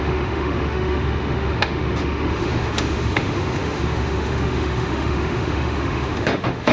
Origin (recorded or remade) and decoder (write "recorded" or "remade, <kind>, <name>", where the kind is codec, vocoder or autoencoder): remade, autoencoder, DAC-VAE